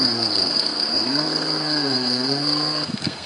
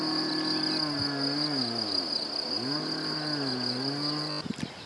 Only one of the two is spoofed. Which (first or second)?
first